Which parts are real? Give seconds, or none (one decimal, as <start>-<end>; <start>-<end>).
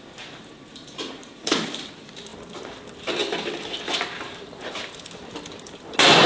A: 0.0-1.2; 1.9-6.3